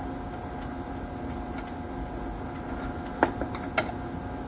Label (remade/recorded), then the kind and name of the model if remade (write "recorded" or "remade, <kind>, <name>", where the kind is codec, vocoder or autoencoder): recorded